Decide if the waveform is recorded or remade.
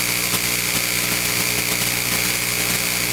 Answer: recorded